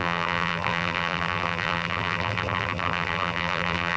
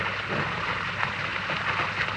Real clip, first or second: second